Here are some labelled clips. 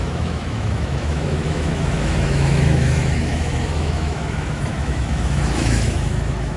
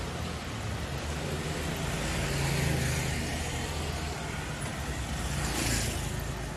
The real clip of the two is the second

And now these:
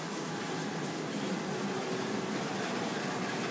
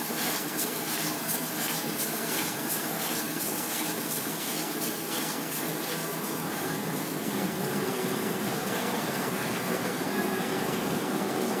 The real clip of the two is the first